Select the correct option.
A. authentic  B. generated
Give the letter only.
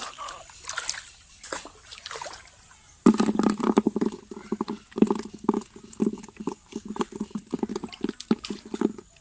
A